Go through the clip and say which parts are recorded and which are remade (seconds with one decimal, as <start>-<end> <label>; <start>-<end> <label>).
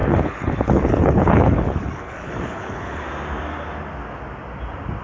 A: 0.0-3.0 remade; 3.0-5.0 recorded